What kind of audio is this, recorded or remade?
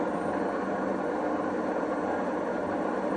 recorded